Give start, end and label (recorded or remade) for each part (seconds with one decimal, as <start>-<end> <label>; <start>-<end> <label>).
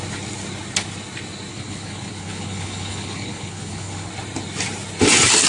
0.0-1.5 recorded; 1.5-4.1 remade; 4.1-5.5 recorded